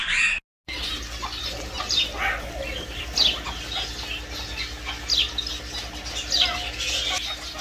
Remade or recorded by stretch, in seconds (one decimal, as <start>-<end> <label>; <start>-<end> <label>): 0.0-7.6 recorded

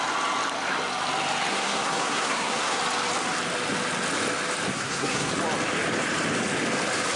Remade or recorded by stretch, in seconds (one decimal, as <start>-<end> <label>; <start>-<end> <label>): 0.0-1.5 recorded; 1.5-2.8 remade; 2.8-4.7 recorded; 4.7-5.3 remade; 5.3-7.2 recorded